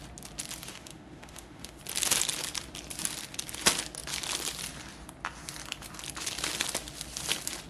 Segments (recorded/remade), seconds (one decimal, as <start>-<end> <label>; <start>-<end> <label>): 0.0-0.7 recorded; 0.7-1.8 remade; 1.8-7.7 recorded